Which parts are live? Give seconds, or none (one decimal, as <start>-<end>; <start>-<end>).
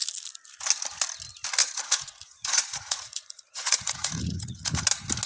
0.0-1.6; 4.8-5.3